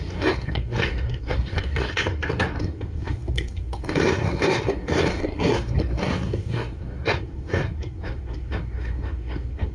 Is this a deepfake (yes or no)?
yes